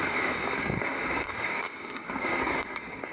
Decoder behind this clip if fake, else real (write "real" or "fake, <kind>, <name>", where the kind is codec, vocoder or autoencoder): fake, codec, DAC